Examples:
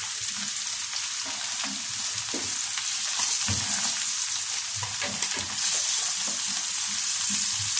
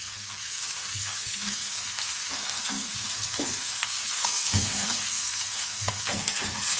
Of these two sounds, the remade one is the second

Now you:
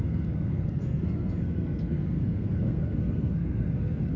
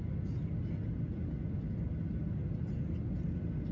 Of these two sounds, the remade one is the first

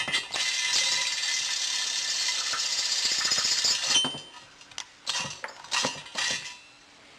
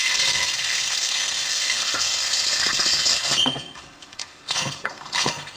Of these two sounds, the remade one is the second